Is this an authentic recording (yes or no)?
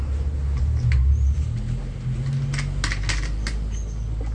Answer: yes